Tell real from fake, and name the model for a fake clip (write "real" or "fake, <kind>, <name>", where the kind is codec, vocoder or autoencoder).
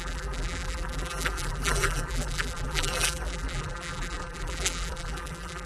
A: fake, vocoder, BigVGAN v2